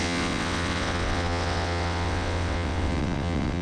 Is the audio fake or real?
fake